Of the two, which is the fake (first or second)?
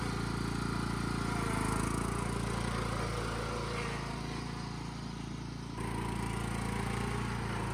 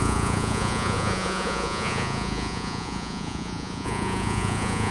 second